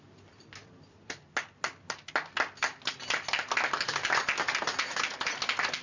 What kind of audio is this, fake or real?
real